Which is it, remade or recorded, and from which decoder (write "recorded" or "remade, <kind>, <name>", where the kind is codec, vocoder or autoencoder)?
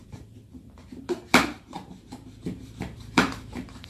remade, vocoder, BigVGAN v2